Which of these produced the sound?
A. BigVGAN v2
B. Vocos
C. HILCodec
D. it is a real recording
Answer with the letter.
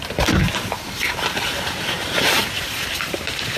A